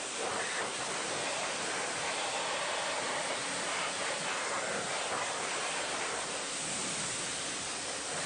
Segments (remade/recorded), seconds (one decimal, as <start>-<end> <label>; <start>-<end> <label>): 0.0-8.3 recorded